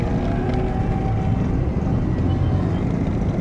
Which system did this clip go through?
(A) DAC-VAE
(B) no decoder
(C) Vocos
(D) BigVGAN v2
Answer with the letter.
B